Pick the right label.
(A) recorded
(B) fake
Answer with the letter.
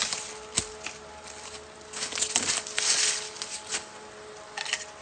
A